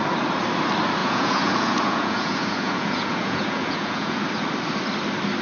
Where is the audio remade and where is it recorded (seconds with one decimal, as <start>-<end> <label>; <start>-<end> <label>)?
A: 0.0-1.0 recorded; 1.0-4.2 remade; 4.2-5.4 recorded